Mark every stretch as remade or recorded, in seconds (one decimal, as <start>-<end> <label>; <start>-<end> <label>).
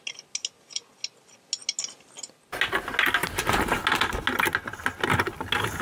0.0-5.8 recorded